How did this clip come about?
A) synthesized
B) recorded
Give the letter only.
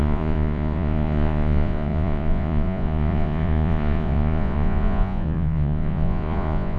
A